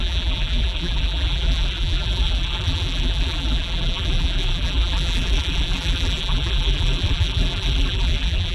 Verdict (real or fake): fake